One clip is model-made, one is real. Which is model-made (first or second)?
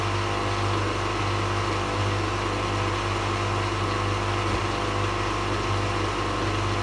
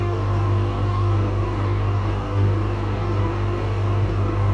second